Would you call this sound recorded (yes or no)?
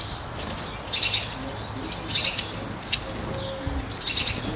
yes